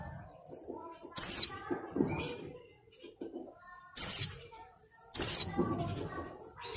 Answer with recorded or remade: recorded